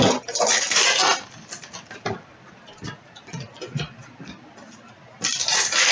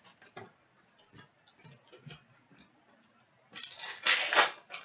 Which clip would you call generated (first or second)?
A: first